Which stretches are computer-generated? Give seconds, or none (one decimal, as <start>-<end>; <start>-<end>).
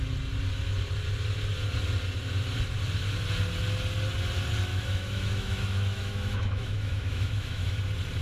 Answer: 4.7-7.7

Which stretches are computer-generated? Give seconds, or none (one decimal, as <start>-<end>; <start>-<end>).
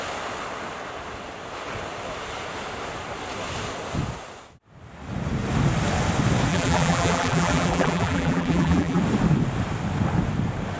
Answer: 6.5-9.0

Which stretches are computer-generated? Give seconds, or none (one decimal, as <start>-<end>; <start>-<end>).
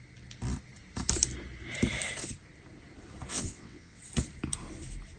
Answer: 3.3-4.0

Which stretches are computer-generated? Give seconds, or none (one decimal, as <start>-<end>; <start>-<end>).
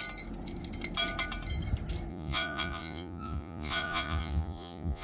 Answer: 2.1-5.0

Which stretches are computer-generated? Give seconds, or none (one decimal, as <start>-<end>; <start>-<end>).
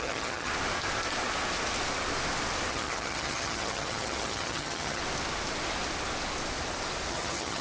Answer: 0.0-0.5; 2.7-5.0; 7.1-7.6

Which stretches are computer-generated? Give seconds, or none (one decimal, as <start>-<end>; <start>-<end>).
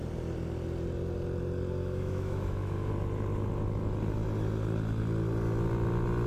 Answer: 1.8-2.9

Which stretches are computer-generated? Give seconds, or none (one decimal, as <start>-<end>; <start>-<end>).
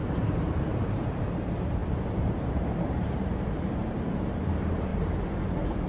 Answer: 0.0-4.9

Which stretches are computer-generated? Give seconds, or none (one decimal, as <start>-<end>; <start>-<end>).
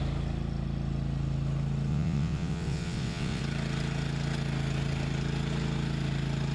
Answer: 1.9-3.4